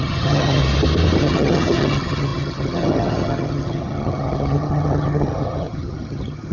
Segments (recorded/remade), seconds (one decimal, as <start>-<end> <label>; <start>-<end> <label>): 0.0-0.6 remade; 0.6-1.2 recorded; 1.2-6.5 remade